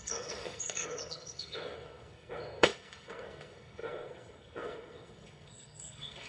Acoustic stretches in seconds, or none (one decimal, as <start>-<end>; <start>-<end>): none